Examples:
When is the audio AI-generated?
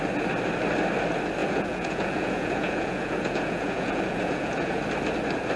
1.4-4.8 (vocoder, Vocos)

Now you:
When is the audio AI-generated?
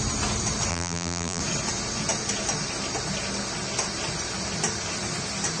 0.7-1.4 (vocoder, BigVGAN v2)